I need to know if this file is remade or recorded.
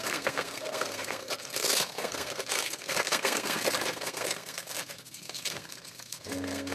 remade